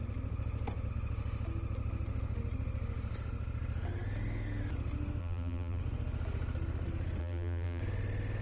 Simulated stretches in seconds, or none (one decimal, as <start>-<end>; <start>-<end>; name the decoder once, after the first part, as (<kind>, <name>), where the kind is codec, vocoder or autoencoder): 5.2-5.8 (vocoder, BigVGAN v2); 7.2-7.8